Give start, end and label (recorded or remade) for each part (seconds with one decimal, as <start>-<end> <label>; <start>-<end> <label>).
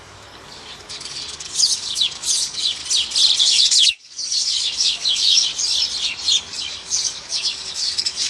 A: 0.0-2.8 remade; 2.8-3.4 recorded; 3.4-5.5 remade; 5.5-6.4 recorded; 6.4-8.3 remade